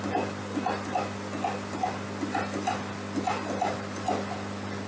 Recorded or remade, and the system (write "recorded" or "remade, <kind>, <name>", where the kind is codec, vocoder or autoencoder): recorded